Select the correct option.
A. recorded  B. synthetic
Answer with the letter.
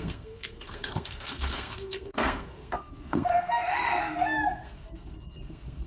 B